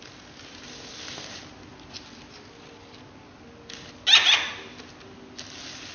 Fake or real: real